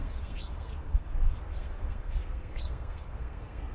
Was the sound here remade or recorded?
remade